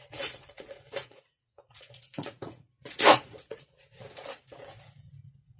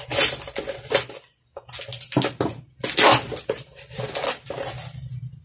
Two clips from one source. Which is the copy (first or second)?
first